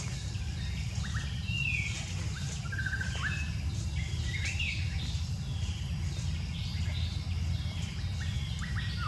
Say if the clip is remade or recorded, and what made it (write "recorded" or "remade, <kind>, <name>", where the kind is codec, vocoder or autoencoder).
recorded